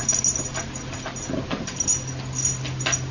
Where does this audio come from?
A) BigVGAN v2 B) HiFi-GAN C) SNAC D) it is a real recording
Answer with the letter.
D